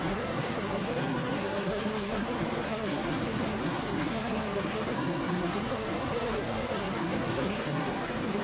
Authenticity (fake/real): fake